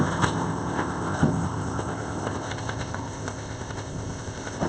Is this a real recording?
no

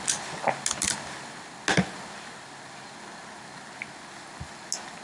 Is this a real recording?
yes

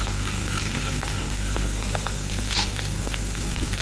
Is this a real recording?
no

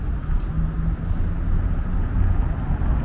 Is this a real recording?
yes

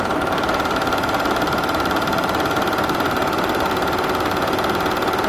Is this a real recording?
no